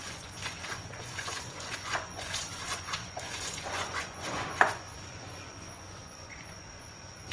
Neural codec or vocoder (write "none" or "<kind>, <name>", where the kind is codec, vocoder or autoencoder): vocoder, Vocos